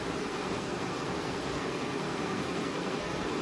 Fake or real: fake